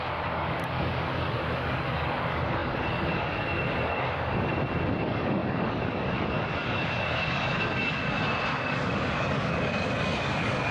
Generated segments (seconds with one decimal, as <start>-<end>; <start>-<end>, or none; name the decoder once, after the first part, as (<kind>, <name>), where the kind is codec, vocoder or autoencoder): 0.0-4.5 (codec, DAC); 5.0-8.0; 8.5-10.7